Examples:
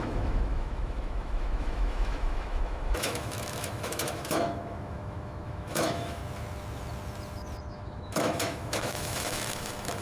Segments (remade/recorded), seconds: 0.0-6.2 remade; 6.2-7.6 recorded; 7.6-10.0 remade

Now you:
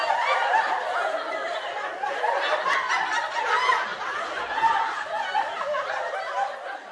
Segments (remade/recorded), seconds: 0.0-6.9 recorded